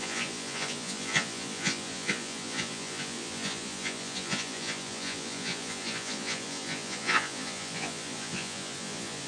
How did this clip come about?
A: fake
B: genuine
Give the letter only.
A